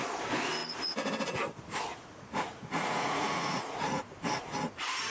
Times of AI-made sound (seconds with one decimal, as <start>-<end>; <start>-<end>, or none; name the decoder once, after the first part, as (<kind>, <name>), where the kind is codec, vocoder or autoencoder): 1.9-4.0 (vocoder, Vocos)